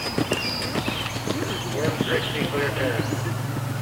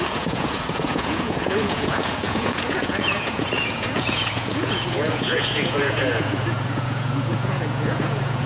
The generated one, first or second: second